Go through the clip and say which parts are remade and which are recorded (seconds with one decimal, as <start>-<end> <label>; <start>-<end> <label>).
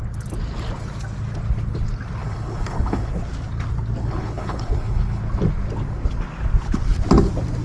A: 0.0-2.2 recorded; 2.2-3.1 remade; 3.1-4.0 recorded; 4.0-5.2 remade; 5.2-7.6 recorded